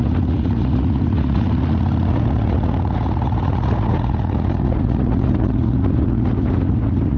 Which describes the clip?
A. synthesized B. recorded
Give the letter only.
A